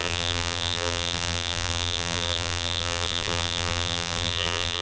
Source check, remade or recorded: remade